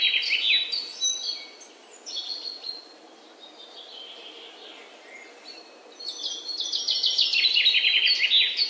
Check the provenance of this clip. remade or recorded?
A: recorded